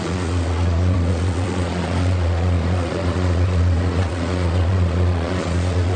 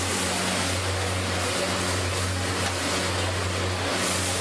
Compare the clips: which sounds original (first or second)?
second